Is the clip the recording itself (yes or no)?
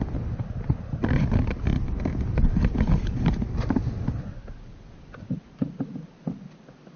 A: yes